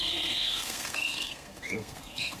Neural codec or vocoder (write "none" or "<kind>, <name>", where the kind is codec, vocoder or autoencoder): codec, SNAC